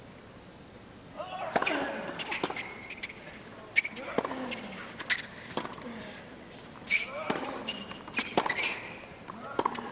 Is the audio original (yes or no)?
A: yes